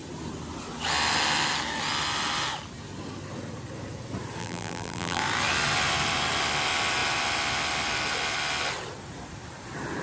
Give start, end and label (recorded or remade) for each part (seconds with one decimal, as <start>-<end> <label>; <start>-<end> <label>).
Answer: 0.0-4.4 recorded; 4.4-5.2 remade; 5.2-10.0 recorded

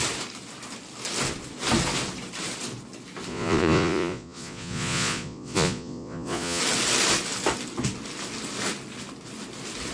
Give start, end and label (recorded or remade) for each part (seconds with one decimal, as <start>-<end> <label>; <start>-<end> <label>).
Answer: 0.0-3.3 recorded; 3.3-6.6 remade; 6.6-9.9 recorded

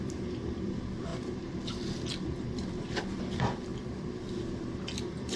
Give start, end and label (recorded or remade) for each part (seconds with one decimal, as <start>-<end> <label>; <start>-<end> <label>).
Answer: 0.0-3.7 remade; 3.7-5.0 recorded; 5.0-5.4 remade

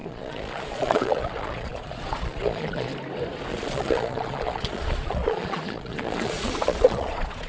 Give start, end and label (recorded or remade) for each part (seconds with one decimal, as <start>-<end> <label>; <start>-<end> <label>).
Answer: 0.0-2.9 remade; 2.9-3.5 recorded; 3.5-7.5 remade

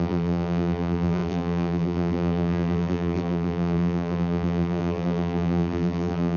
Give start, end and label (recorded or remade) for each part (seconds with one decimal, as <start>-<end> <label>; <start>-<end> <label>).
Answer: 0.0-6.4 remade

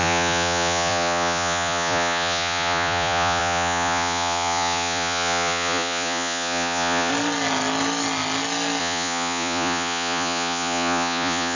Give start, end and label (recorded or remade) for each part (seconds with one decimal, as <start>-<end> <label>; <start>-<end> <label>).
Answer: 0.0-7.1 remade; 7.1-8.8 recorded; 8.8-11.6 remade

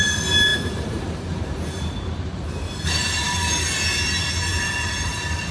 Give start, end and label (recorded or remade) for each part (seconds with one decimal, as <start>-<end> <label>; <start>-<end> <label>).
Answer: 0.0-0.5 recorded; 0.5-3.5 remade; 3.5-4.5 recorded; 4.5-5.5 remade